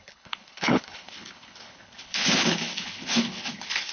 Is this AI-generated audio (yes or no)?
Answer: yes